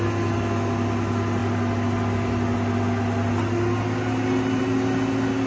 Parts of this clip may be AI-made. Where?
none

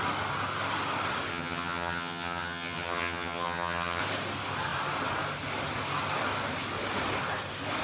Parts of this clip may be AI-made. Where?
1.3-4.0 (vocoder, HiFi-GAN)

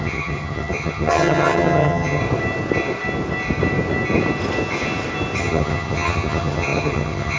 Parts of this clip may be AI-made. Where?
0.0-2.2 (vocoder, HiFi-GAN); 5.4-7.4

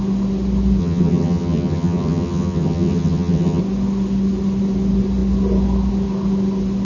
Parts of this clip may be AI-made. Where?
0.8-3.6 (vocoder, HiFi-GAN)

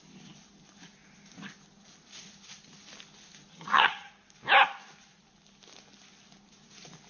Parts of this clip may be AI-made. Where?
3.5-4.1 (vocoder, HiFi-GAN)

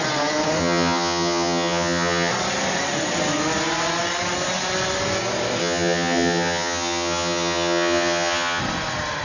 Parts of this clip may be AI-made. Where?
0.6-2.3 (vocoder, HiFi-GAN); 5.6-8.6